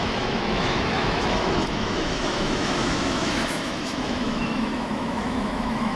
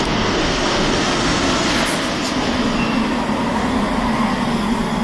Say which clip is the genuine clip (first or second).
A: second